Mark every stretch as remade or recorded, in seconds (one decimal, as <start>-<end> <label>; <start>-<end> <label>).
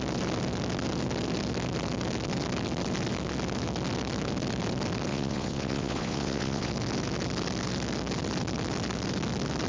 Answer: 0.0-5.1 recorded; 5.1-6.7 remade; 6.7-9.7 recorded